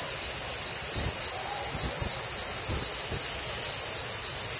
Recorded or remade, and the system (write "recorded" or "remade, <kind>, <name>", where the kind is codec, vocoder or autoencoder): recorded